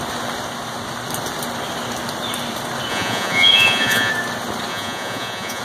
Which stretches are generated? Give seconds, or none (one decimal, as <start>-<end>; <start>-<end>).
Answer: 2.9-4.1; 4.7-5.6